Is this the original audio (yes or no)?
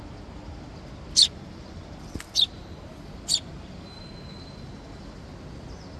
yes